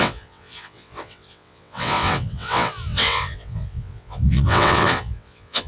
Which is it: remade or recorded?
remade